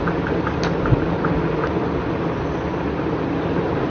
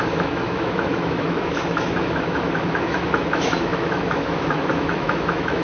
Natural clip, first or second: first